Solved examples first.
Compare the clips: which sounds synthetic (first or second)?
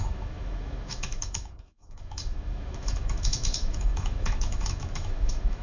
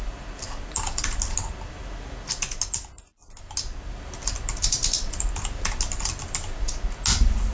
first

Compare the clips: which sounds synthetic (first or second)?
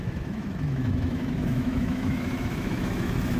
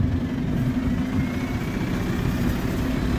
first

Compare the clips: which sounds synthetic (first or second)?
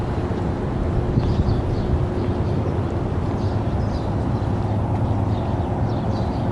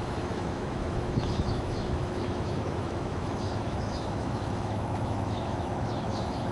second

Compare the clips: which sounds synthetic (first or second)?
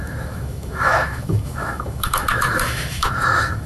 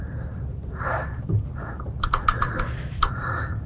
first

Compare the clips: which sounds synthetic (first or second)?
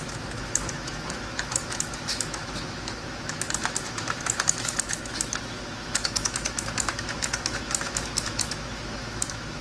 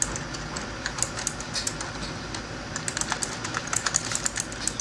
first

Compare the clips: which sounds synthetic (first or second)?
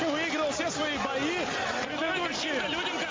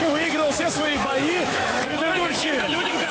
second